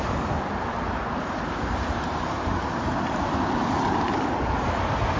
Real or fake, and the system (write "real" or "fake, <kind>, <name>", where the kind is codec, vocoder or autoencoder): fake, vocoder, BigVGAN v2